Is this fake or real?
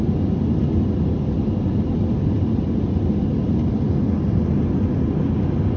real